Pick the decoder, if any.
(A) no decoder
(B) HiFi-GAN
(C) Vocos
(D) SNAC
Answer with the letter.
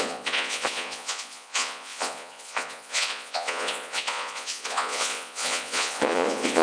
C